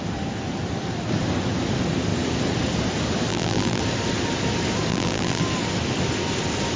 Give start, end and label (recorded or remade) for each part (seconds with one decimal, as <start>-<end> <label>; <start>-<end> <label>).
0.0-3.3 recorded; 3.3-3.8 remade; 3.8-4.9 recorded; 4.9-5.4 remade; 5.4-6.8 recorded